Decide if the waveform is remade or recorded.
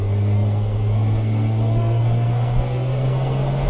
remade